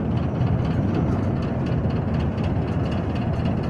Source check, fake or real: real